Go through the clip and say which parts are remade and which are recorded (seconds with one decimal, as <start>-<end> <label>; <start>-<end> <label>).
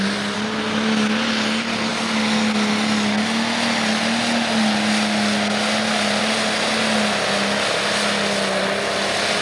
0.0-9.4 recorded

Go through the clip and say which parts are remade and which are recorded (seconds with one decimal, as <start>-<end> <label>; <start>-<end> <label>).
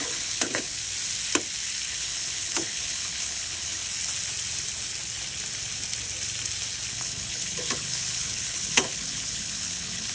0.0-0.8 remade; 0.8-1.9 recorded; 1.9-3.8 remade; 3.8-6.9 recorded; 6.9-10.1 remade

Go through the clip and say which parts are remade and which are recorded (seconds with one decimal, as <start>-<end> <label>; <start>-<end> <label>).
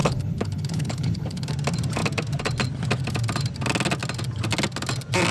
0.0-1.5 remade; 1.5-5.3 recorded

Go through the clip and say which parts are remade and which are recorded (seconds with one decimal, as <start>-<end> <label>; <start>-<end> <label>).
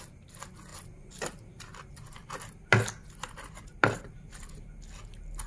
0.0-5.5 recorded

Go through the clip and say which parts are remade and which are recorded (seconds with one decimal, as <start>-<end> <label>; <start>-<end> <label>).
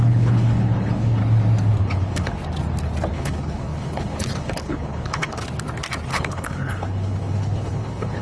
0.0-1.2 remade; 1.2-1.8 recorded; 1.8-2.4 remade; 2.4-3.1 recorded; 3.1-5.4 remade; 5.4-6.1 recorded; 6.1-8.2 remade